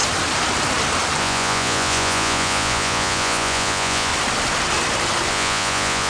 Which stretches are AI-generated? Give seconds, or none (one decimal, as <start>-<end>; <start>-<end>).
1.2-4.1; 5.3-6.1